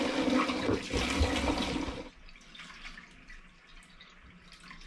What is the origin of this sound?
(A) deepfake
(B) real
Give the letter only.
B